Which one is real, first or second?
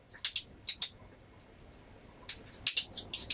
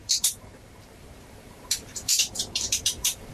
first